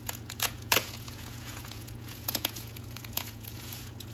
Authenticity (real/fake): fake